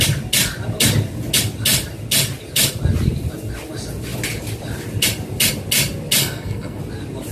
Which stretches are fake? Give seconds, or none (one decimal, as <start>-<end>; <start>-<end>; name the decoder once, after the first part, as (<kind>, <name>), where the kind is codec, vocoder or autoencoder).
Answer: 6.2-6.8 (codec, SNAC)